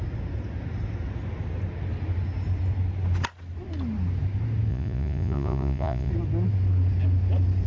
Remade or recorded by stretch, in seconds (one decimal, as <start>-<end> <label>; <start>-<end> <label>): 0.0-4.7 recorded; 4.7-6.1 remade; 6.1-7.7 recorded

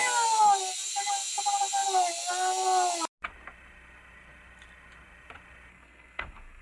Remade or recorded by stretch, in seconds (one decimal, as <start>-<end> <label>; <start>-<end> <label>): 0.0-5.7 recorded; 5.7-6.6 remade

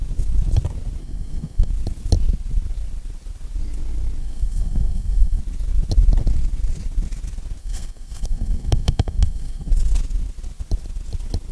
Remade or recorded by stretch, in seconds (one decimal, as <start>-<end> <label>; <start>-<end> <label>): 0.0-1.0 recorded; 1.0-1.7 remade; 1.7-4.2 recorded; 4.2-5.4 remade; 5.4-7.6 recorded; 7.6-9.7 remade; 9.7-11.5 recorded

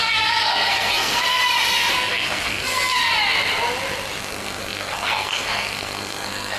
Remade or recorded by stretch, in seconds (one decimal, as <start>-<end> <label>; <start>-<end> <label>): 0.0-1.4 remade; 1.4-1.9 recorded; 1.9-3.1 remade; 3.1-4.2 recorded; 4.2-6.6 remade

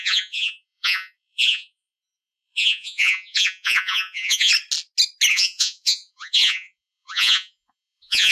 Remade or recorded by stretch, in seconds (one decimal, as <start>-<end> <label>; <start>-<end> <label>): 0.0-4.5 remade; 4.5-5.3 recorded; 5.3-8.3 remade

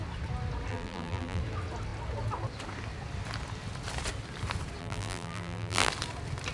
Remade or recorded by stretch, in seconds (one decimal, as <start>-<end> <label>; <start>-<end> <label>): 0.0-0.7 recorded; 0.7-1.4 remade; 1.4-4.8 recorded; 4.8-5.9 remade; 5.9-6.5 recorded